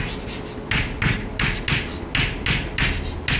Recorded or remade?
recorded